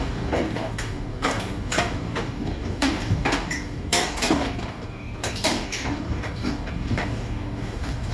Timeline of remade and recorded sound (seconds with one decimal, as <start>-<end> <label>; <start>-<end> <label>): 0.0-8.1 remade